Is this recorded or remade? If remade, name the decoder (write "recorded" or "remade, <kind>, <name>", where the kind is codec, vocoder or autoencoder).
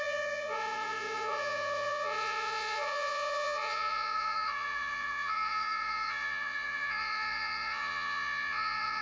remade, vocoder, Vocos